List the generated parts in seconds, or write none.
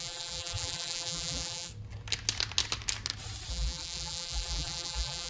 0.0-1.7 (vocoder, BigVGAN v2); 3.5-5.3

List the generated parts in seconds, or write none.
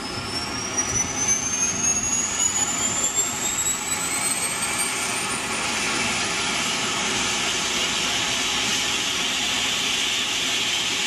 2.1-3.5 (vocoder, BigVGAN v2); 6.8-7.7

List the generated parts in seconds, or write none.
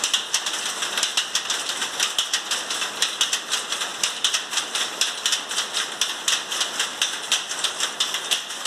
3.9-4.6 (vocoder, BigVGAN v2)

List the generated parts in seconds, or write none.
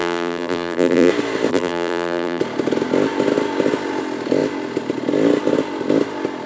0.0-1.1 (vocoder, BigVGAN v2); 1.5-2.4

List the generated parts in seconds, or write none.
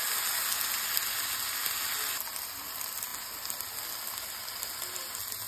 none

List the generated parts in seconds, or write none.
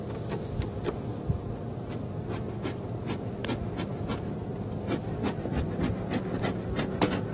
none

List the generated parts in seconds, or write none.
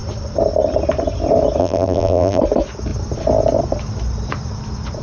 1.6-2.4 (vocoder, BigVGAN v2)